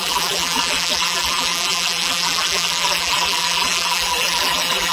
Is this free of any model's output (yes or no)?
no